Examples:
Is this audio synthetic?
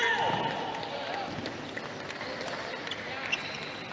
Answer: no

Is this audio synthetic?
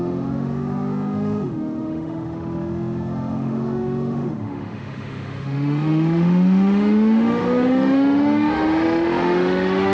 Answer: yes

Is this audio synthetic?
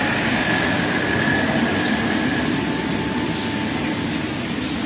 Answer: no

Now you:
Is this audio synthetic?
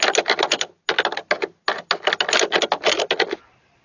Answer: no